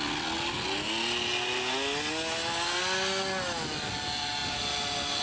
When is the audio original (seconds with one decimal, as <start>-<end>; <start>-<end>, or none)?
0.0-5.2